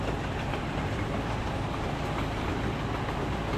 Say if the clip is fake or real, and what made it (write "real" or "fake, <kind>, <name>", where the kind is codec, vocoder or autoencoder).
real